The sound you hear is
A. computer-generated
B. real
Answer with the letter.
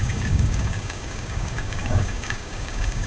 A